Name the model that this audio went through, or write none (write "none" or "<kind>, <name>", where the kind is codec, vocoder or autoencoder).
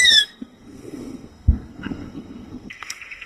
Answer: codec, SNAC